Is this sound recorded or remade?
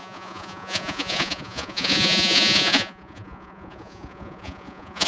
remade